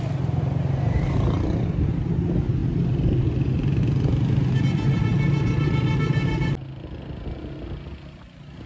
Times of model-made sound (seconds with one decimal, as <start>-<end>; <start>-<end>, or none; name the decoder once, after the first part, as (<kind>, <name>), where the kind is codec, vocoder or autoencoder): none